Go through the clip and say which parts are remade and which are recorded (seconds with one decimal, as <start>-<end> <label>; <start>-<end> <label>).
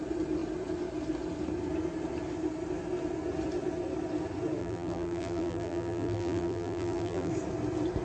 0.0-4.6 recorded; 4.6-7.3 remade; 7.3-8.0 recorded